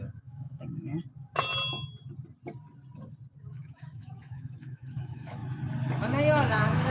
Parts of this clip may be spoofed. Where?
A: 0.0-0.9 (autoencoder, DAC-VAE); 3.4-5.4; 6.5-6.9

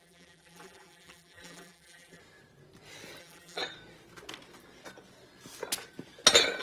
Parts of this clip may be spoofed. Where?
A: 0.0-2.2 (vocoder, BigVGAN v2); 3.2-3.6

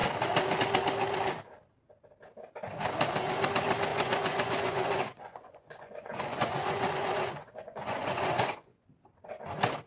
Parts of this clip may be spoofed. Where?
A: 3.9-8.9 (vocoder, Vocos)

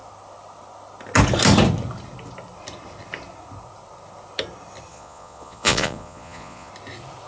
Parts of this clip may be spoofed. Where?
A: 4.9-6.7 (vocoder, Vocos)